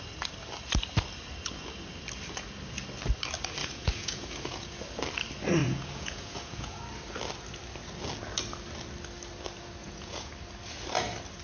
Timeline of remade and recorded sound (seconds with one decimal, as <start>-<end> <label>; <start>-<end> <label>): 0.0-3.6 recorded; 3.6-4.8 remade; 4.8-5.6 recorded; 5.6-6.8 remade; 6.8-9.8 recorded; 9.8-10.3 remade; 10.3-11.4 recorded

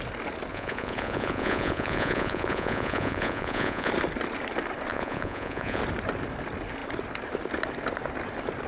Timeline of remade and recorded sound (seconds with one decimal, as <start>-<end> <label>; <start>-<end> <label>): 0.0-0.5 recorded; 0.5-3.9 remade; 3.9-4.9 recorded; 4.9-5.8 remade; 5.8-8.7 recorded

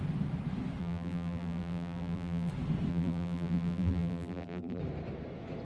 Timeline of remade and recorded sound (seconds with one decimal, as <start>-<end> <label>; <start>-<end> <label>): 0.0-0.8 recorded; 0.8-2.5 remade; 2.5-2.9 recorded; 2.9-4.8 remade; 4.8-5.6 recorded

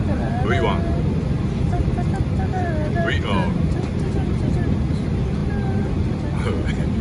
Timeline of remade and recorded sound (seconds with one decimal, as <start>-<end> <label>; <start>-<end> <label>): 0.0-7.0 recorded

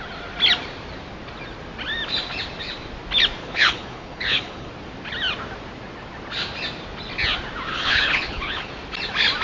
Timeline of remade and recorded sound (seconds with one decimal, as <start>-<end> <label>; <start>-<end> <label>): 0.0-3.4 recorded; 3.4-4.7 remade; 4.7-7.7 recorded; 7.7-8.7 remade; 8.7-9.4 recorded

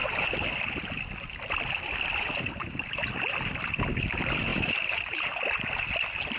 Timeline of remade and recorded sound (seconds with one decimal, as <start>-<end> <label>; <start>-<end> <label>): 0.0-6.4 recorded

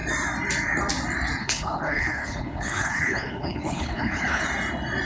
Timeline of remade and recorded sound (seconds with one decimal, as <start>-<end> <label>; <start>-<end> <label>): 0.0-1.4 recorded; 1.4-4.4 remade; 4.4-5.0 recorded